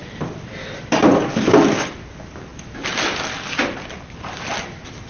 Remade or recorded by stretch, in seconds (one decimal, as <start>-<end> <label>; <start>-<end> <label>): 0.0-1.1 remade; 1.1-5.1 recorded